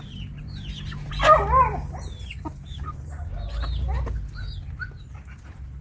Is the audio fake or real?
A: real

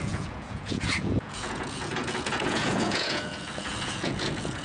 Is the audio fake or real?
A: fake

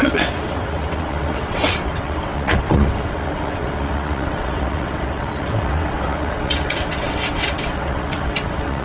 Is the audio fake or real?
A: fake